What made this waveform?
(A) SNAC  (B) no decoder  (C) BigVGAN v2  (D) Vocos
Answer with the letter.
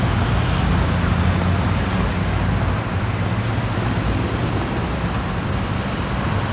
B